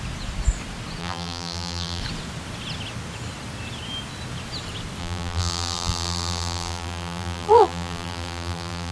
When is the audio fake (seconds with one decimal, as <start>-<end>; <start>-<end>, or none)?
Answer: 1.0-2.0; 5.0-8.9